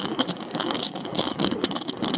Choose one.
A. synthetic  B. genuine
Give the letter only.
A